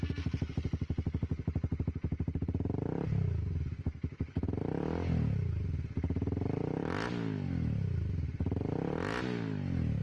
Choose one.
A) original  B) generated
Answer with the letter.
A